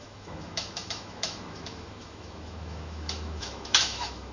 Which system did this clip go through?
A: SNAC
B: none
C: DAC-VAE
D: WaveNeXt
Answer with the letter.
C